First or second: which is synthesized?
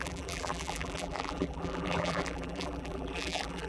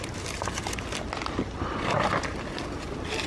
first